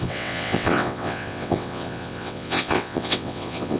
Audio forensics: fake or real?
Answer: fake